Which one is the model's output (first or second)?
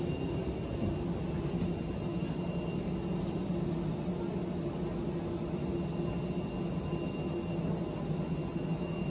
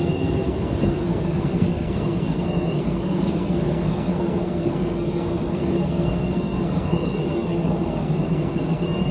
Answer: second